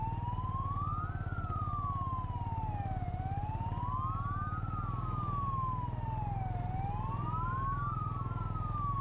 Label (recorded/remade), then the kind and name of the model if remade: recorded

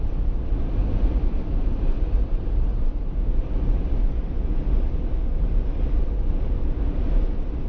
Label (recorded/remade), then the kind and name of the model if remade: recorded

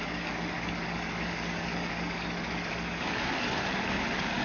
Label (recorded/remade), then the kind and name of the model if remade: remade, codec, DAC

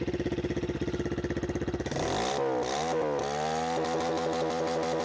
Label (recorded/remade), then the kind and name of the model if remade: recorded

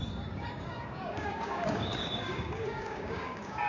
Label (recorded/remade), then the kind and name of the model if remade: remade, codec, DAC